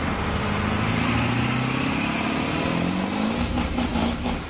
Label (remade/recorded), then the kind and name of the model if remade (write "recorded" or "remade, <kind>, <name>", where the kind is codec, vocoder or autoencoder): recorded